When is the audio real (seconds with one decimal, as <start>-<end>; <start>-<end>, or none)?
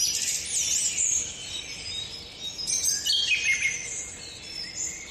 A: 0.0-5.1